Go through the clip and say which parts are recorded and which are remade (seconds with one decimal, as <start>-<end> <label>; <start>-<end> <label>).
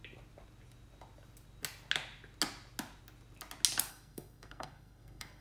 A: 0.0-3.9 recorded; 3.9-5.4 remade